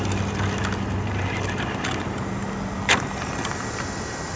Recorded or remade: recorded